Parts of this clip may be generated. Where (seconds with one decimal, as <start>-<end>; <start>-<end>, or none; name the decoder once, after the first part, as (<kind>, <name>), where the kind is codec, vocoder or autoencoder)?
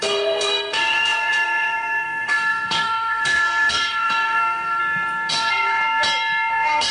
0.0-4.8 (codec, SNAC); 5.3-5.8; 6.5-6.9